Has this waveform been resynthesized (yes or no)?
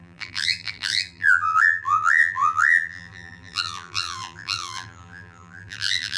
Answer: yes